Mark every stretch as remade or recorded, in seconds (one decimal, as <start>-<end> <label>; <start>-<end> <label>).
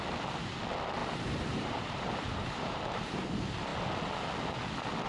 0.0-1.0 recorded; 1.0-3.3 remade; 3.3-5.1 recorded